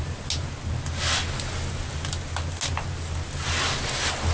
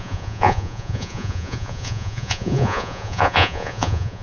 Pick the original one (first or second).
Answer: first